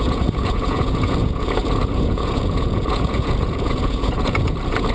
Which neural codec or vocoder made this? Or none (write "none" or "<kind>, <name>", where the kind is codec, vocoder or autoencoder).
vocoder, Vocos